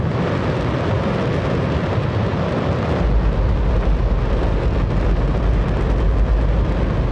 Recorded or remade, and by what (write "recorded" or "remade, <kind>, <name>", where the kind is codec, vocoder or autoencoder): recorded